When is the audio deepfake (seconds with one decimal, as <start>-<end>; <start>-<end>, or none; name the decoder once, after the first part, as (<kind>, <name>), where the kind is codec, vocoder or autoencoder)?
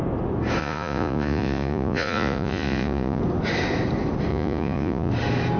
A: 0.6-3.2 (vocoder, Vocos); 4.3-5.1